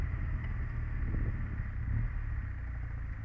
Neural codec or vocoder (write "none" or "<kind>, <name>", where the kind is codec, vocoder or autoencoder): none